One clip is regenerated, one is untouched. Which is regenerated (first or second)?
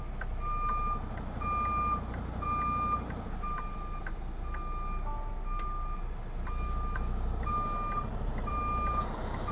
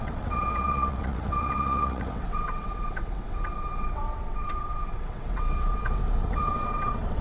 second